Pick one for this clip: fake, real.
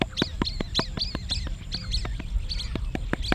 real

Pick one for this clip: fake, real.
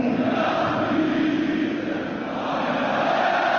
real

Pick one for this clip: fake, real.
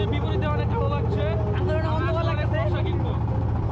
real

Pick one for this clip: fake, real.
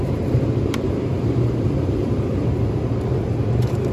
fake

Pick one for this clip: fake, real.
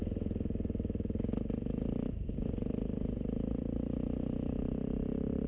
real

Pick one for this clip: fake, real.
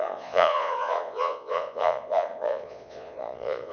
fake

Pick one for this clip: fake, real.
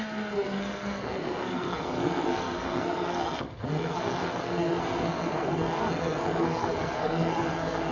fake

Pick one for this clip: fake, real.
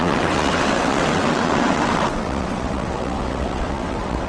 fake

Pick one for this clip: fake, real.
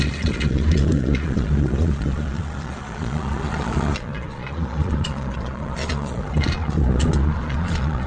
fake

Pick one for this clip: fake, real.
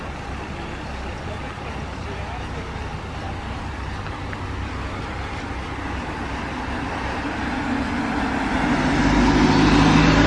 real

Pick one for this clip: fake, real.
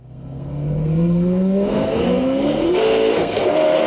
fake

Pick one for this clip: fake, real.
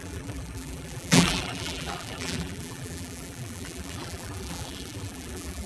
fake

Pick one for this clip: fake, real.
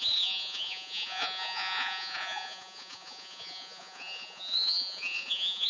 fake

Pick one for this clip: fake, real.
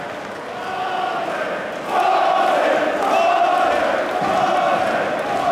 real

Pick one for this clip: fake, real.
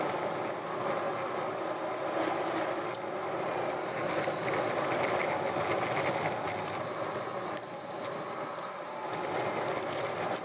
real